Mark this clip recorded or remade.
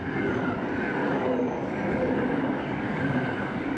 remade